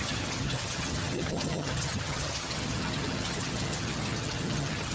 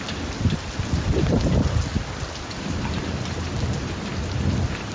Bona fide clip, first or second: second